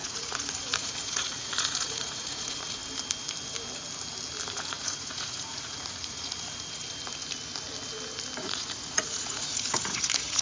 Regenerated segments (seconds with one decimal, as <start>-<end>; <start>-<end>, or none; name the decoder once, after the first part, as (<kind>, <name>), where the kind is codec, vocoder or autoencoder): 0.0-2.8 (vocoder, Vocos); 4.5-6.8; 8.4-10.4

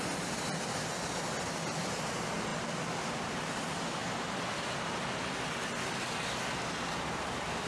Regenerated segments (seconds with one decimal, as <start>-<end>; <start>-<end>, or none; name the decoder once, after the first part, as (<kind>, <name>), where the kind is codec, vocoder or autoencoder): none

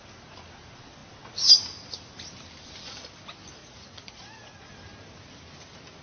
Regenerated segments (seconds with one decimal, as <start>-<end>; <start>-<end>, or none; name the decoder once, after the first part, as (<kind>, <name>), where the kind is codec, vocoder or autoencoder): 3.6-4.7 (vocoder, Vocos)

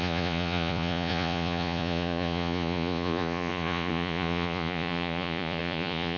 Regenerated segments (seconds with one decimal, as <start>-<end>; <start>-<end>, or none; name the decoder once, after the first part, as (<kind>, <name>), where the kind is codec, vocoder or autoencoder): 0.0-6.2 (vocoder, Vocos)

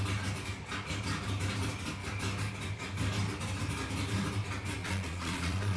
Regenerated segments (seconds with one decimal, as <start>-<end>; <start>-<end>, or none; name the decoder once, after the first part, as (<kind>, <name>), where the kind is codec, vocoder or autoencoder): 4.8-5.8 (vocoder, Vocos)

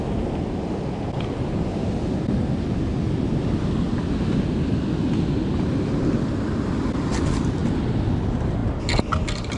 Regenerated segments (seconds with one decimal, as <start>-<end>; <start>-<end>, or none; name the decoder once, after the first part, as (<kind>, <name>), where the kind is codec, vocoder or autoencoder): none

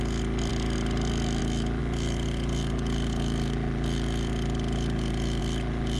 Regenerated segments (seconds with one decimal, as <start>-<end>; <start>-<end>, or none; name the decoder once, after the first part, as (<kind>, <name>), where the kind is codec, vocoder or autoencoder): none

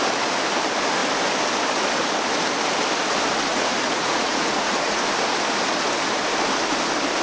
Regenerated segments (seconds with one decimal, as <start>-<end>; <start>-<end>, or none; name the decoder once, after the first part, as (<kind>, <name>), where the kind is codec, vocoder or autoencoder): 3.5-5.0 (vocoder, Vocos)